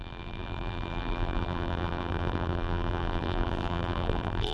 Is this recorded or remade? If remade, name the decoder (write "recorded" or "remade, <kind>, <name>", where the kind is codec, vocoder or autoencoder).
remade, vocoder, BigVGAN v2